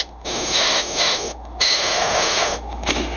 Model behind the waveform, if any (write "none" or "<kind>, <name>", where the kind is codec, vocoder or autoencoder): autoencoder, DAC-VAE